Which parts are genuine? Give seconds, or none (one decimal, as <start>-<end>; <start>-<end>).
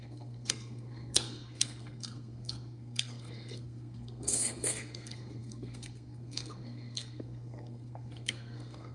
none